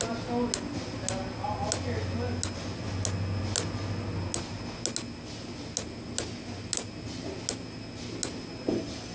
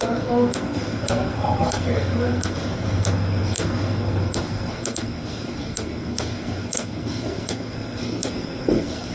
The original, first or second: first